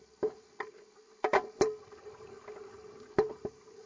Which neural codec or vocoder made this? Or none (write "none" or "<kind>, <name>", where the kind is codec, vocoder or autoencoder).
none